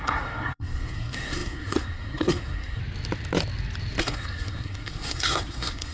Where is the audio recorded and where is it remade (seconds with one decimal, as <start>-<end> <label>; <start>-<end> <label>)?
0.0-2.8 remade; 2.8-4.0 recorded; 4.0-5.9 remade